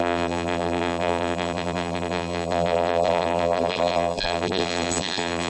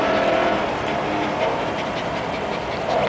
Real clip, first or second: second